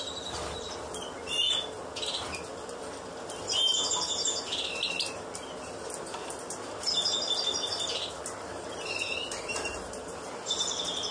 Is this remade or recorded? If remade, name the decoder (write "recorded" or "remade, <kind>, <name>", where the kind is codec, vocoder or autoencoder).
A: recorded